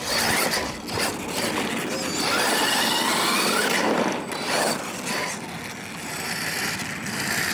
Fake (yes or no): no